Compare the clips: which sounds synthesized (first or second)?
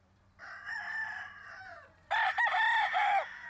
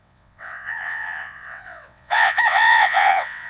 second